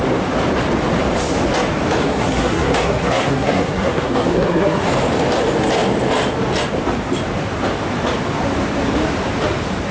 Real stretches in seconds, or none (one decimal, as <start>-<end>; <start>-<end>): 0.0-2.0; 4.9-9.9